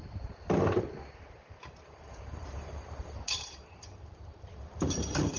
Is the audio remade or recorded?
remade